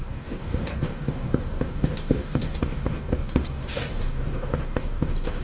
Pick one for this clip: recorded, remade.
remade